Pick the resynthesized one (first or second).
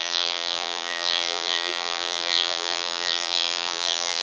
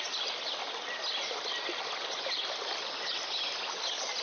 first